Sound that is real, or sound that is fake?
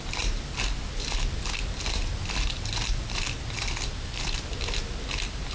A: real